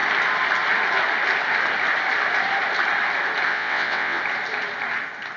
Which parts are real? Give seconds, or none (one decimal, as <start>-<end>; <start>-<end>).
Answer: 0.0-3.5; 4.2-5.4